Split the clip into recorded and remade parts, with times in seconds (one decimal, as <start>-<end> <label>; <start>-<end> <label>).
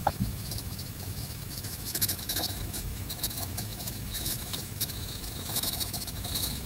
0.0-6.7 remade